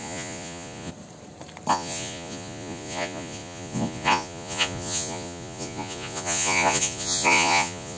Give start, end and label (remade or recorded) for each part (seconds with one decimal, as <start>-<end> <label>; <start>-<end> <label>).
0.0-0.9 remade; 0.9-1.7 recorded; 1.7-8.0 remade